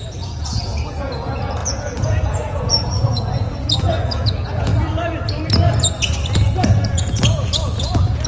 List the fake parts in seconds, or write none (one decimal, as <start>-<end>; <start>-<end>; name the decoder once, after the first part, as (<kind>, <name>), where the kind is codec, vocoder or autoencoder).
0.0-4.7 (vocoder, Vocos); 6.6-8.3